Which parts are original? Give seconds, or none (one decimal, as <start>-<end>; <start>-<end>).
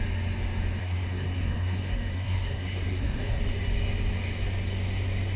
0.0-0.8; 3.4-5.4